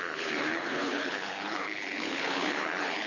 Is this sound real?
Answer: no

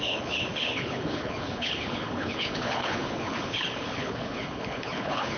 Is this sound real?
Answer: no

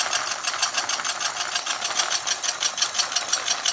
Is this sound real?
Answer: yes